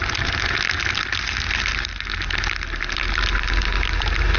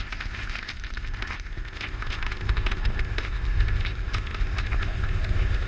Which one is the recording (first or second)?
first